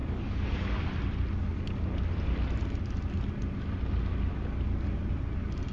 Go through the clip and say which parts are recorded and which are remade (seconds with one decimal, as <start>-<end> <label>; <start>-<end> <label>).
0.0-0.9 remade; 0.9-5.7 recorded